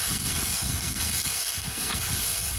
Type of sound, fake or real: fake